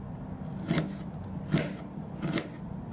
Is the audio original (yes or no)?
yes